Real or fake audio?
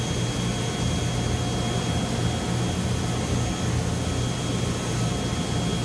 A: real